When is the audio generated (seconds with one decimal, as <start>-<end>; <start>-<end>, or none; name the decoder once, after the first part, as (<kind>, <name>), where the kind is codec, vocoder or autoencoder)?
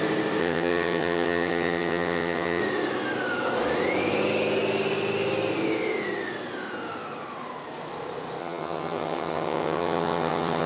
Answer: 0.4-2.6 (vocoder, HiFi-GAN); 8.4-10.7